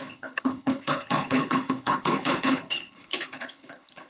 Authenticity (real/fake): fake